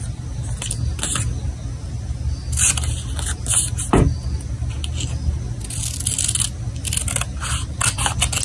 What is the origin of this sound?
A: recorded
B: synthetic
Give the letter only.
A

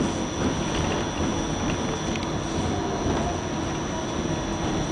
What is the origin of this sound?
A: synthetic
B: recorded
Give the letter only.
B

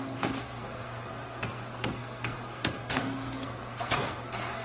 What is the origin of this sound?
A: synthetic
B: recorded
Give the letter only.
A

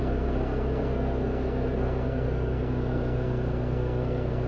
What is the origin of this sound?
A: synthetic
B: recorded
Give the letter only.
A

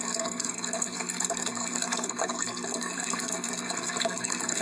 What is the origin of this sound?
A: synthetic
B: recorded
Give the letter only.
A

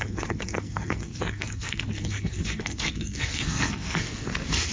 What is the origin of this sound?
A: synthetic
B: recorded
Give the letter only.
A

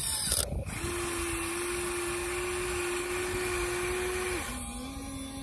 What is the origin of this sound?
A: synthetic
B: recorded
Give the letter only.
B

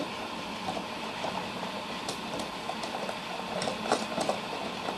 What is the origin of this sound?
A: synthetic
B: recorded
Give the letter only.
B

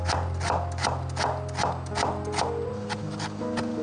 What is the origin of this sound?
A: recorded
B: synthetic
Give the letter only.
A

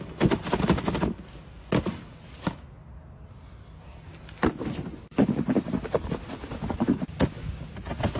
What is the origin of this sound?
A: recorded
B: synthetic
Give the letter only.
A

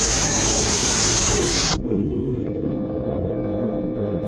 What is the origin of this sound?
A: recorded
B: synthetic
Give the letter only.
B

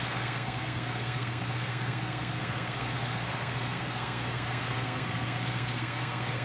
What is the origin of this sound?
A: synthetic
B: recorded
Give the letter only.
A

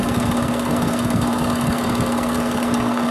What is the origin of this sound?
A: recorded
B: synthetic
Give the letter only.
B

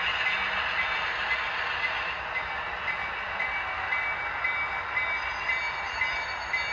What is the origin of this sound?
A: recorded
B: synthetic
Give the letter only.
A